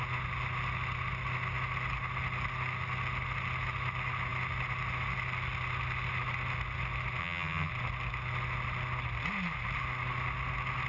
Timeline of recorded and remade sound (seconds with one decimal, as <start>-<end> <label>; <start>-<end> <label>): 0.0-7.2 recorded; 7.2-7.7 remade; 7.7-10.9 recorded

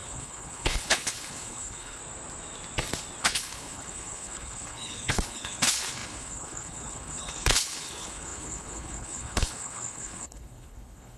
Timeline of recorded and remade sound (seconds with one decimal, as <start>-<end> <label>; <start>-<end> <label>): 0.0-2.0 remade; 2.0-3.2 recorded; 3.2-11.2 remade

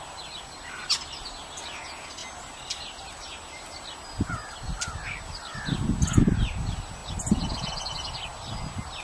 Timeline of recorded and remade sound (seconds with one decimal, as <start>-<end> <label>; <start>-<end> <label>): 0.0-9.0 recorded

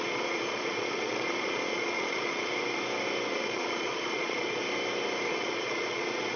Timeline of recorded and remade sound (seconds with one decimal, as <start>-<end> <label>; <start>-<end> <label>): 0.0-2.5 remade; 2.5-3.3 recorded; 3.3-4.6 remade; 4.6-5.3 recorded; 5.3-6.4 remade

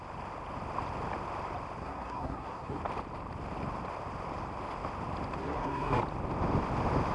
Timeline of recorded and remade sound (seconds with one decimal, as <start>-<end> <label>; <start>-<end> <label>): 0.0-1.8 recorded; 1.8-2.8 remade; 2.8-5.4 recorded; 5.4-6.0 remade; 6.0-7.1 recorded

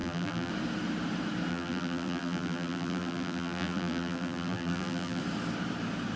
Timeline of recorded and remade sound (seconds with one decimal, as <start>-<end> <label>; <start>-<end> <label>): 0.0-0.5 remade; 0.5-1.5 recorded; 1.5-5.2 remade; 5.2-6.2 recorded

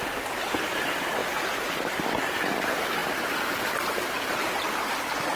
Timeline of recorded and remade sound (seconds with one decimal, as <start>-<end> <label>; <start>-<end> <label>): 0.0-1.2 recorded; 1.2-1.8 remade; 1.8-5.4 recorded

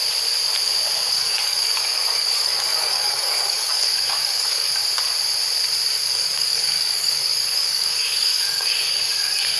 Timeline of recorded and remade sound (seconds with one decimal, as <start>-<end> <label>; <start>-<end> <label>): 0.0-1.1 recorded; 1.1-4.8 remade; 4.8-6.0 recorded; 6.0-9.6 remade